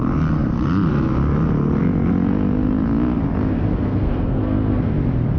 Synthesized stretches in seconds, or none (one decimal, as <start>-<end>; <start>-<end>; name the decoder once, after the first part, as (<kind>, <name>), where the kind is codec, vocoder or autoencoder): 3.5-4.9 (codec, SNAC)